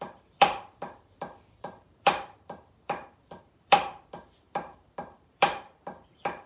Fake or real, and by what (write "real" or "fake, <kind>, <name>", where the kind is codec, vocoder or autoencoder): fake, vocoder, BigVGAN v2